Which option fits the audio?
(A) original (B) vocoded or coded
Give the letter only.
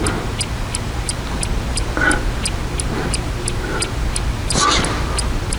A